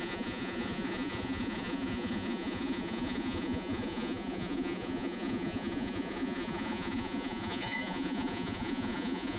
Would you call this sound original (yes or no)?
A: no